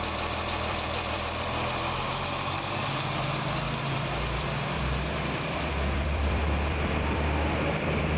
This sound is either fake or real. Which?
fake